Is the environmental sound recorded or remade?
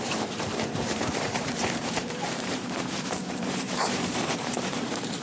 remade